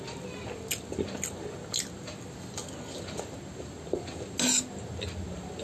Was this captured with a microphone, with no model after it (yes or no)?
yes